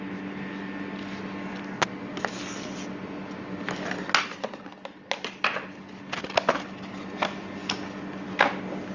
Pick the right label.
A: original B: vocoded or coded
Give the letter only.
A